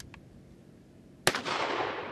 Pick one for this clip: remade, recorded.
recorded